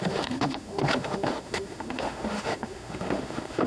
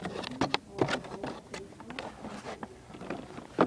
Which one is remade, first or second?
first